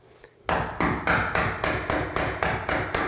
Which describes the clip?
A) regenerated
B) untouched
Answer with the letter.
B